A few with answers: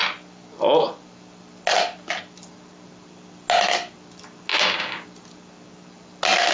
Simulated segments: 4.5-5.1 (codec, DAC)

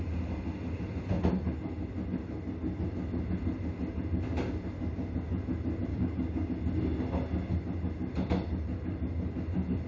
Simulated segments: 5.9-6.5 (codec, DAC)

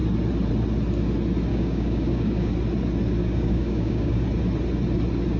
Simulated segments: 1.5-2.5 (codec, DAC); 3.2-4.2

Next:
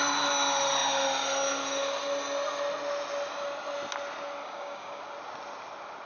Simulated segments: 4.4-5.0 (codec, DAC)